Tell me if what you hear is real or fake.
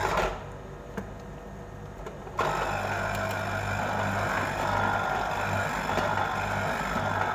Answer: real